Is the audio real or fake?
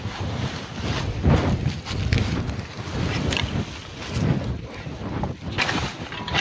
real